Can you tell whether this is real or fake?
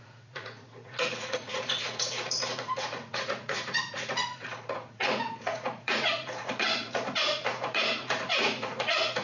fake